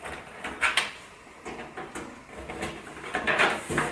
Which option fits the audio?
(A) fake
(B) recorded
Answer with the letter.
B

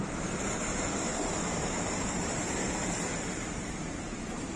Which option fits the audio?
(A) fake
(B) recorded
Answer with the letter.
A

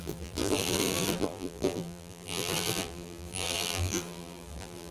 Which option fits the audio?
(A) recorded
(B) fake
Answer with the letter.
B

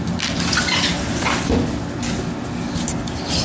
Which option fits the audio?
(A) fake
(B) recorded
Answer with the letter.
B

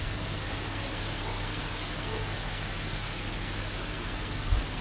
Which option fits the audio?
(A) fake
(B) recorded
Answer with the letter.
A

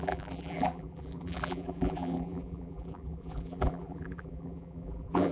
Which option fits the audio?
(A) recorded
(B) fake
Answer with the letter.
B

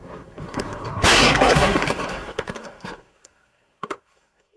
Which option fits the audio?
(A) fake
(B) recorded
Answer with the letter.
A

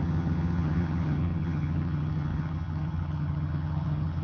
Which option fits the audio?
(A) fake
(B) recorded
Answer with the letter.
A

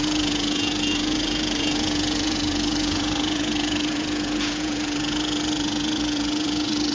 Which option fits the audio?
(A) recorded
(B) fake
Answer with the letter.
B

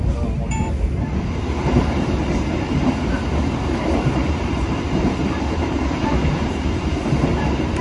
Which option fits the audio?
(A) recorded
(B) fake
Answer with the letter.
B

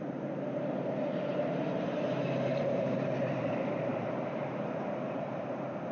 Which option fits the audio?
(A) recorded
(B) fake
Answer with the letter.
B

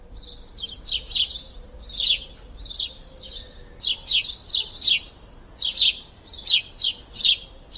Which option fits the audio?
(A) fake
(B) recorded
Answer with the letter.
B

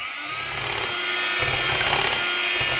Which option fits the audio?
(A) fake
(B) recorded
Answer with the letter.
B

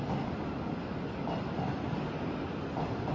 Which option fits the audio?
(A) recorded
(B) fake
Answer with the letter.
A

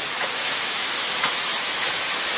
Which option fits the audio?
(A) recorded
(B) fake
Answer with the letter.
B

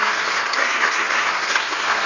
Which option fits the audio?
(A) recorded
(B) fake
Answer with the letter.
B